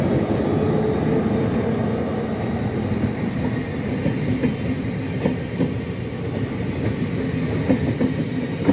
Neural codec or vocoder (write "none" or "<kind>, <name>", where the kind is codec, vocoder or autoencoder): none